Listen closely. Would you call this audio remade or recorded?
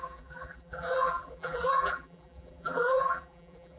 remade